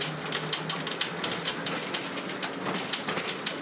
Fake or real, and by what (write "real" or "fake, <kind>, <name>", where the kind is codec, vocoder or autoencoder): real